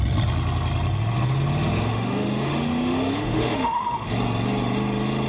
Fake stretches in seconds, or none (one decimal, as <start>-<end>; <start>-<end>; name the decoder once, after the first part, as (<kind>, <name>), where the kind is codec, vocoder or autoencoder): 1.9-4.1 (autoencoder, DAC-VAE)